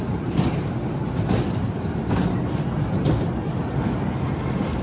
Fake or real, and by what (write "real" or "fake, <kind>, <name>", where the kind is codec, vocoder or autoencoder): real